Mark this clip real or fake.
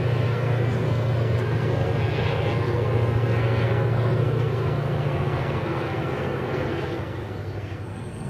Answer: fake